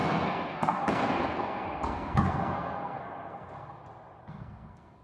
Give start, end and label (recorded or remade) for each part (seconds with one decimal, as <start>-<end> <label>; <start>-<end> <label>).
0.0-3.8 remade; 3.8-4.3 recorded; 4.3-5.0 remade